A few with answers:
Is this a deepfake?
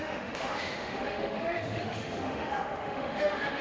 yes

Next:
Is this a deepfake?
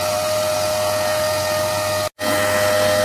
no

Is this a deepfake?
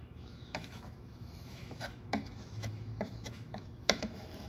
yes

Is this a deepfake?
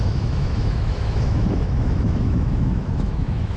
yes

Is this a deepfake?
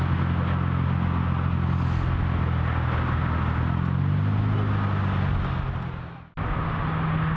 no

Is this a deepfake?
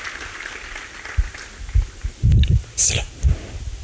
no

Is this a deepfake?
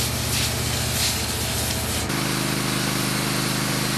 no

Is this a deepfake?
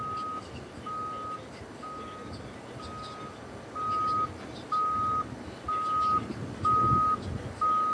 no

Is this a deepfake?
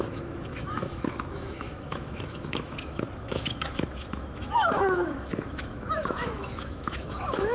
yes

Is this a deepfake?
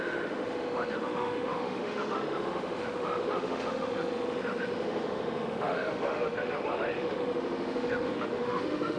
yes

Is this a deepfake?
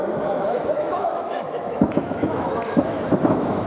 yes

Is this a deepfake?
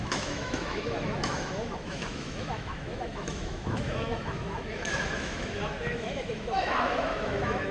yes